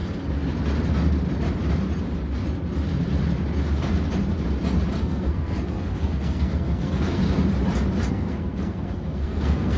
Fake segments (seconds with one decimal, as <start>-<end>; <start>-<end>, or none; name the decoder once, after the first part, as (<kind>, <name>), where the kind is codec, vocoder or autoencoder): 5.0-7.2 (codec, SNAC); 8.1-9.8

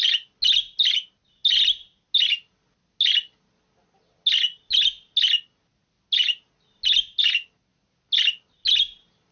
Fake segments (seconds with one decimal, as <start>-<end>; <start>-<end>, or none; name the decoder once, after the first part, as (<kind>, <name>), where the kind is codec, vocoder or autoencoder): none

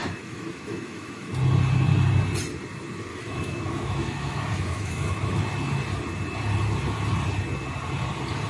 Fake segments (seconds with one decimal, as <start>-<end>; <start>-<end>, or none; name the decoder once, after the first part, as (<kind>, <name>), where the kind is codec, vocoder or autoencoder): 0.0-1.3 (autoencoder, DAC-VAE); 3.1-5.4

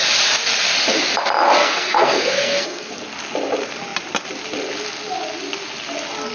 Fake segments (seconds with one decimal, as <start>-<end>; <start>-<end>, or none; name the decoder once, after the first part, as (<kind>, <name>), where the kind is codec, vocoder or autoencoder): 1.6-3.0 (codec, SNAC)

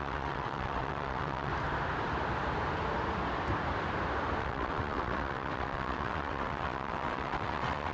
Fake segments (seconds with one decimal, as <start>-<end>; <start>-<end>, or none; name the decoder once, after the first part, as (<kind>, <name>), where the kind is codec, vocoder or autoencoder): 0.0-1.5 (vocoder, WaveNeXt); 4.4-7.9

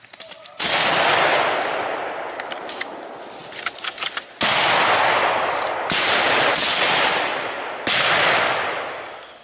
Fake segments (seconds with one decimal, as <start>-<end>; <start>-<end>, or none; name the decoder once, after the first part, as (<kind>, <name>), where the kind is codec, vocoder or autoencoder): 1.3-2.4 (vocoder, BigVGAN v2)

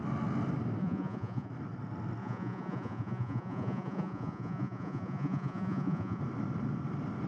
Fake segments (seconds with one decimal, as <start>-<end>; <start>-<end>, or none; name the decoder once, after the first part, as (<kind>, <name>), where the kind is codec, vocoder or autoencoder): 0.8-1.5 (vocoder, Vocos); 2.2-6.2